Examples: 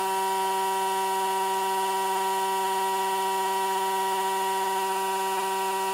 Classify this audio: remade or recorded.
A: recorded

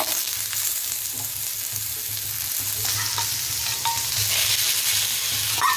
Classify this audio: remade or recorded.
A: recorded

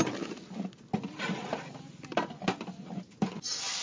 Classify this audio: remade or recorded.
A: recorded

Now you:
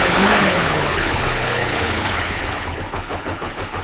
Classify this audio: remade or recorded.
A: remade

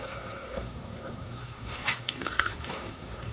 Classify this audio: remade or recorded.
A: remade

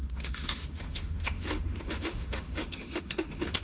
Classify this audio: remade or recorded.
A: remade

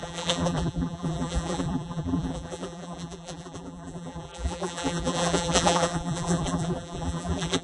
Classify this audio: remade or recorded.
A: remade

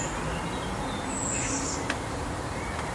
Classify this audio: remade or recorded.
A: recorded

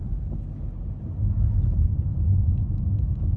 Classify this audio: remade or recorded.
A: recorded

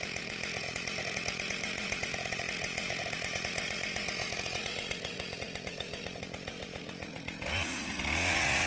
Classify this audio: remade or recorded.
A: remade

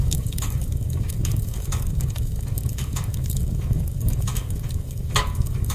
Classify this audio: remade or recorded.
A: remade